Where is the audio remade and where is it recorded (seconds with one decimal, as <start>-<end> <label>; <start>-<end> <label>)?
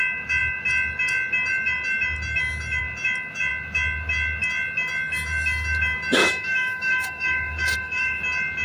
0.0-6.2 recorded; 6.2-8.2 remade; 8.2-8.6 recorded